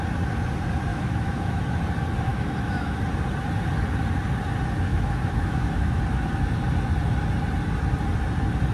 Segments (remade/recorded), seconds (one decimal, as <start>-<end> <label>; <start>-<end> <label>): 0.0-0.9 recorded; 0.9-1.6 remade; 1.6-2.3 recorded; 2.3-3.0 remade; 3.0-4.9 recorded; 4.9-6.0 remade; 6.0-8.7 recorded